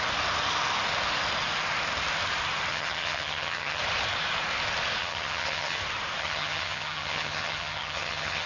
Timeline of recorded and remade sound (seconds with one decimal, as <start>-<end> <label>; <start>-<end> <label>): 0.0-2.7 recorded; 2.7-3.8 remade; 3.8-5.0 recorded; 5.0-5.8 remade; 5.8-6.2 recorded; 6.2-8.5 remade